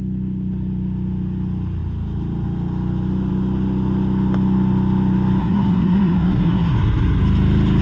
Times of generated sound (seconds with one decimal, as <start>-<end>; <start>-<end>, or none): 5.4-7.2